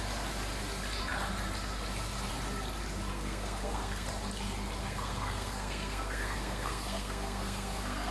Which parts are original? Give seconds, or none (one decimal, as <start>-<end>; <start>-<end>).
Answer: 0.0-3.1; 4.1-4.8